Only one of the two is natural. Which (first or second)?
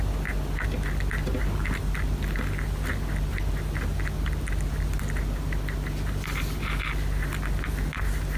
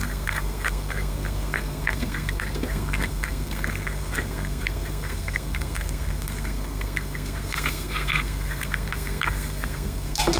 first